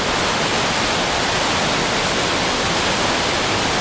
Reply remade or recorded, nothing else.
recorded